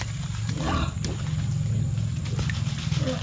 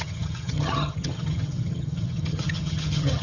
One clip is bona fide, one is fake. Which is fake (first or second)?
second